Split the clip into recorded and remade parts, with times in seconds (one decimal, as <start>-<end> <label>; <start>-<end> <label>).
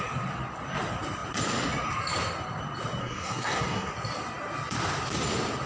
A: 0.0-3.0 recorded; 3.0-3.9 remade; 3.9-5.7 recorded